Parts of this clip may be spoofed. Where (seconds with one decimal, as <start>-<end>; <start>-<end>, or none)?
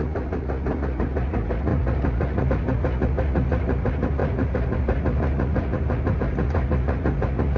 0.0-7.6